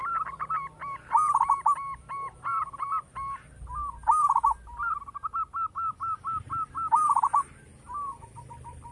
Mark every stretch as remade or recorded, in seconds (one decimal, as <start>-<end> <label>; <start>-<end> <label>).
0.0-0.5 remade; 0.5-8.9 recorded